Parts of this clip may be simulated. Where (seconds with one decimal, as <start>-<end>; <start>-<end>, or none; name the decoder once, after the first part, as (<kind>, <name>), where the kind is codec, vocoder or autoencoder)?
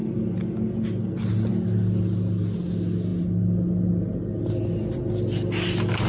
none